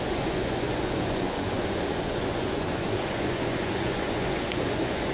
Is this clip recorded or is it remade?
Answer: remade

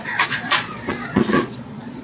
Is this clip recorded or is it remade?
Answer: remade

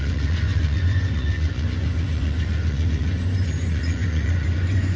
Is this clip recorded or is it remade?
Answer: remade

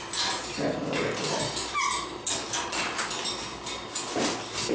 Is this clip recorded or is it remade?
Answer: recorded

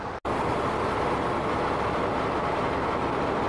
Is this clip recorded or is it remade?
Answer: recorded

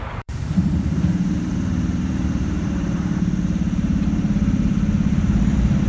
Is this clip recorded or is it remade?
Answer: remade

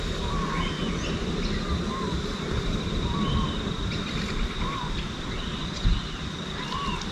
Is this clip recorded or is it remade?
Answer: recorded